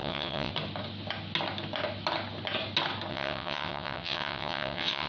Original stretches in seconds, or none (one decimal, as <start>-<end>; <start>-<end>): 0.5-3.1